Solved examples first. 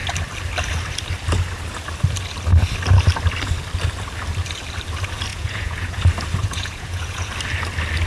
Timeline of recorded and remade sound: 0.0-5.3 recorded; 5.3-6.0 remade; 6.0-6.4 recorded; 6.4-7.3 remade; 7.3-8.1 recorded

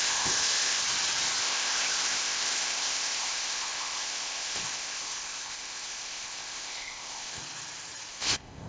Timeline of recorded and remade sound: 0.0-0.8 remade; 0.8-1.4 recorded; 1.4-7.4 remade; 7.4-8.1 recorded; 8.1-8.7 remade

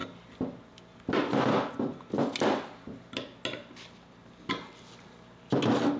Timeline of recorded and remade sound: 0.0-6.0 recorded

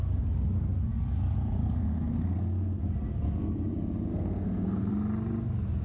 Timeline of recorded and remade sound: 0.0-1.6 recorded; 1.6-2.8 remade; 2.8-4.1 recorded; 4.1-4.9 remade; 4.9-5.8 recorded